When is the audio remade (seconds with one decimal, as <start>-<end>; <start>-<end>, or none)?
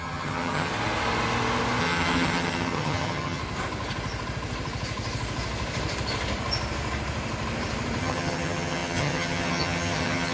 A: 0.0-0.7; 1.8-3.4; 8.0-10.3